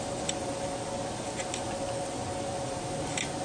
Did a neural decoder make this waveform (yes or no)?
no